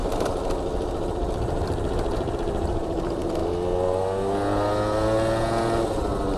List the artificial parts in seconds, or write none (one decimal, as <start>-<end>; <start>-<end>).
0.9-3.4